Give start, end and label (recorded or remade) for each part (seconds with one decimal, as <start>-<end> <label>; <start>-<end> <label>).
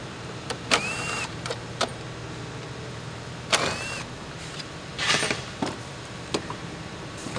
0.0-1.9 remade; 1.9-4.4 recorded; 4.4-7.4 remade